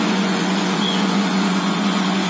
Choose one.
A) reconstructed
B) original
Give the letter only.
A